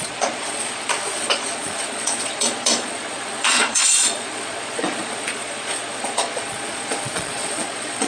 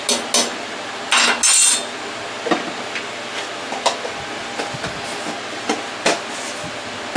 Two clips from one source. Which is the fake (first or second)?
first